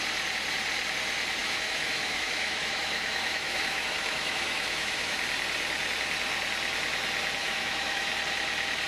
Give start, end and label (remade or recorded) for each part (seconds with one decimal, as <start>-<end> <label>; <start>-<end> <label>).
0.0-1.4 recorded; 1.4-5.2 remade; 5.2-7.4 recorded; 7.4-8.1 remade; 8.1-8.9 recorded

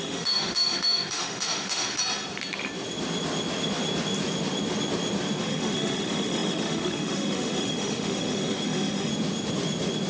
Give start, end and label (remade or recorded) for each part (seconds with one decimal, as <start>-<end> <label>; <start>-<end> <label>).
0.0-2.0 remade; 2.0-5.4 recorded; 5.4-9.1 remade; 9.1-10.1 recorded